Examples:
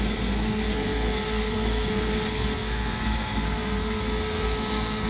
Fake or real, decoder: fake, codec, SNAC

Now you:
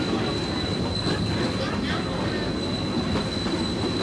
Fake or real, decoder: real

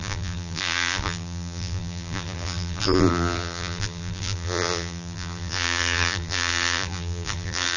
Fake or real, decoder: fake, vocoder, BigVGAN v2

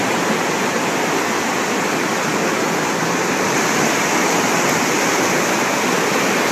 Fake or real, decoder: real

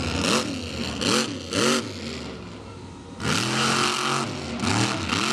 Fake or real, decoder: real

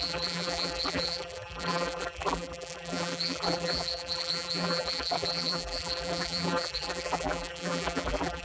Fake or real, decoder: fake, vocoder, BigVGAN v2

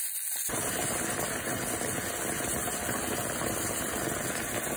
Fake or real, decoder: real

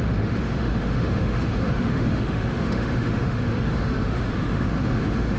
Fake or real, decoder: fake, autoencoder, DAC-VAE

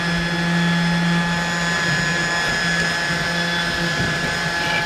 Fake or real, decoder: real